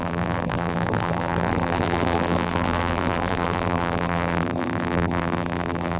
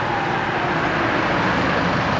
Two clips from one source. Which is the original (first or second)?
second